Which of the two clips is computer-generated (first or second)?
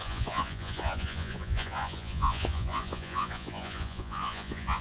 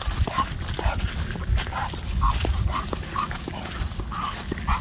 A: first